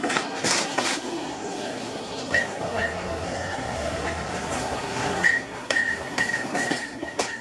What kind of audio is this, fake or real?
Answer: fake